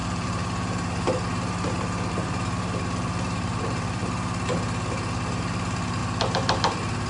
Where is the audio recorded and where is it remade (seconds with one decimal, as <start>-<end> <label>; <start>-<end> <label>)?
0.0-4.0 remade; 4.0-5.4 recorded; 5.4-6.0 remade; 6.0-7.1 recorded